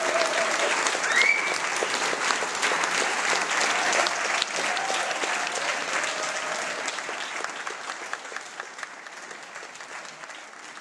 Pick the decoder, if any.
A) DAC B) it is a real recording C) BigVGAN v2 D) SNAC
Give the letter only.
B